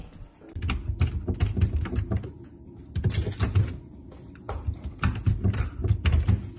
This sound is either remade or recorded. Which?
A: recorded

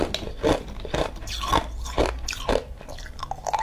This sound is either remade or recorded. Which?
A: recorded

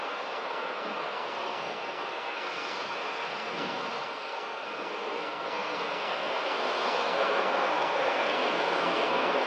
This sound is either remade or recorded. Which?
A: remade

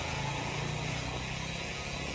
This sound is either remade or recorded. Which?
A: recorded